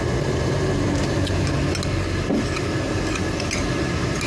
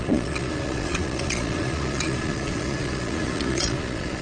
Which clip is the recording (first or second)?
first